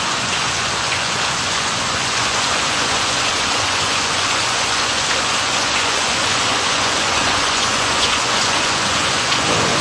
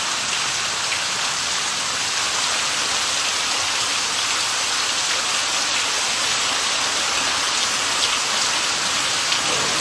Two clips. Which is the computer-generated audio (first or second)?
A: first